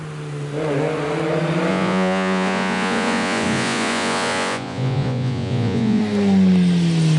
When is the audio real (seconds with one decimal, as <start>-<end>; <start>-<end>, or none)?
0.0-1.7; 6.0-7.2